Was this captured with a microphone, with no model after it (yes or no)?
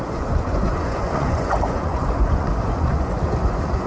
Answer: no